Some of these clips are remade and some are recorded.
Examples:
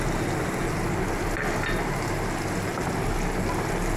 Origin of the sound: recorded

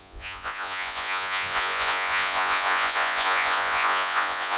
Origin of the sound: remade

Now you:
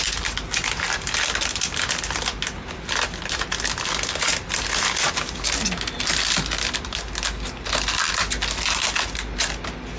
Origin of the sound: recorded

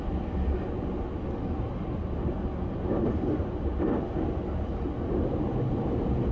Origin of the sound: recorded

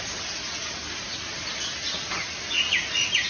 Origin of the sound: recorded